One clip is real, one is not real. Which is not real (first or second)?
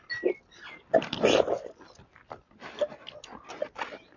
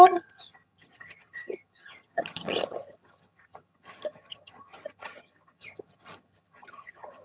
second